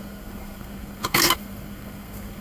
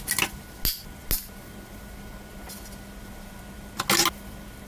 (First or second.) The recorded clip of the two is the second